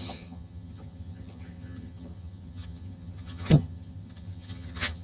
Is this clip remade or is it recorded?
remade